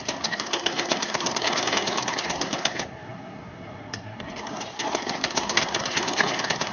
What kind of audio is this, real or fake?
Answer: fake